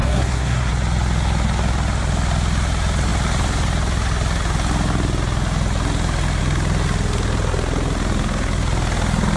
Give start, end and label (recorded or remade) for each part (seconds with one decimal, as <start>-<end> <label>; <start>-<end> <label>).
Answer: 0.0-0.7 remade; 0.7-9.4 recorded